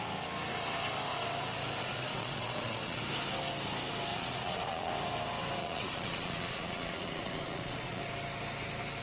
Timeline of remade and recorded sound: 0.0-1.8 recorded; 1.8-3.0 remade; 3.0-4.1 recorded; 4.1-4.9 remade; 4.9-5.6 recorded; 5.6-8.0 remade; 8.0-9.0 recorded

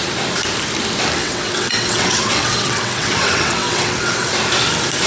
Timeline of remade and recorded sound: 0.0-1.2 recorded; 1.2-4.3 remade; 4.3-5.1 recorded